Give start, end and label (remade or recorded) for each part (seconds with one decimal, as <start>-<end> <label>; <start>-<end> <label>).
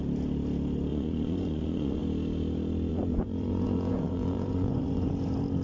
0.0-0.9 recorded; 0.9-2.0 remade; 2.0-2.9 recorded; 2.9-5.1 remade; 5.1-5.6 recorded